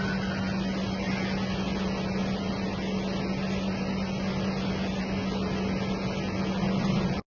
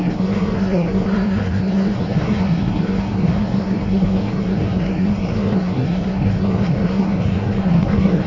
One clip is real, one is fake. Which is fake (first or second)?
second